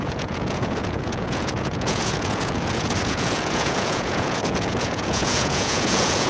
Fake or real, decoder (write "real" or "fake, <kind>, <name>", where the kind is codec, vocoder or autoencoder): fake, vocoder, Vocos